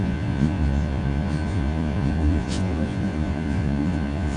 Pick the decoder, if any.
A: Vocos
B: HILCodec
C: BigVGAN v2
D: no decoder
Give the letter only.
A